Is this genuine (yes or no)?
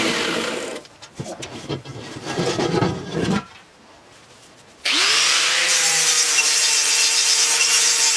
no